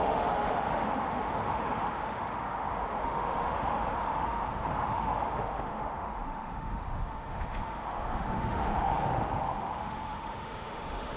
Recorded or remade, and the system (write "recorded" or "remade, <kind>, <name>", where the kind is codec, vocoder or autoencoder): remade, autoencoder, DAC-VAE